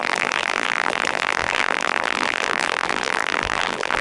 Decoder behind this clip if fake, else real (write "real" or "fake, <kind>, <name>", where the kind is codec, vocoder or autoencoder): fake, vocoder, BigVGAN v2